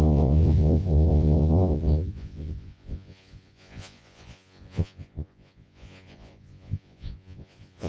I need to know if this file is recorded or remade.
remade